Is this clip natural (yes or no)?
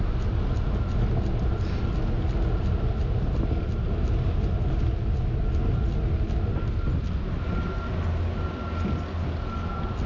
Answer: yes